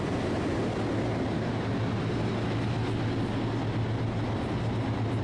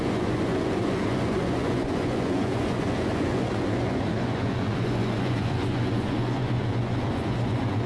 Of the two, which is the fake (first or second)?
second